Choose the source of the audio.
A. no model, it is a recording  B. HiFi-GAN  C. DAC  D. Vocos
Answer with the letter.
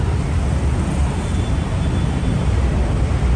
A